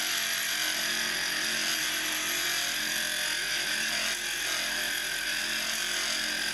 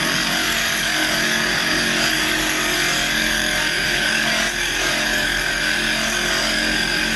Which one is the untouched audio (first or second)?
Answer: first